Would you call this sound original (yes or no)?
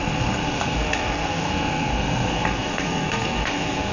no